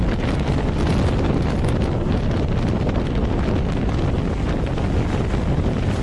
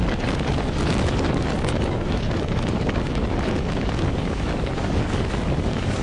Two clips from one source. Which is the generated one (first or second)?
second